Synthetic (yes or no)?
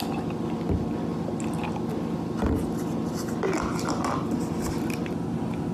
no